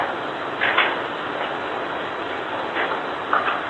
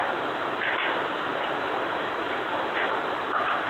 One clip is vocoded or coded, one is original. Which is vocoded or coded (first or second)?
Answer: second